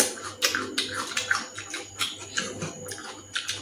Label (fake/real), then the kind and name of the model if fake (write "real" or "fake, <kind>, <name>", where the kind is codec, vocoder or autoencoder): real